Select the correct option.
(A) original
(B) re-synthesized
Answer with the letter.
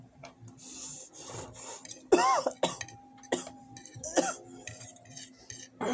A